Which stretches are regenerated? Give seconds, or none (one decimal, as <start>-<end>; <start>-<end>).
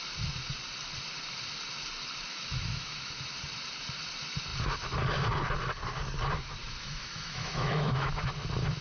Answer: 2.3-3.1; 6.6-8.1